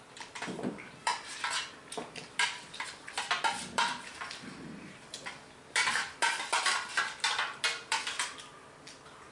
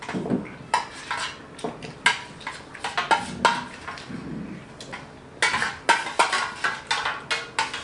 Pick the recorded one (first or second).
second